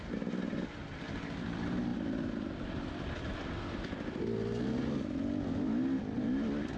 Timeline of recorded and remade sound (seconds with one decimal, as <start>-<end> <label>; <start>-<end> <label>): 0.0-6.8 recorded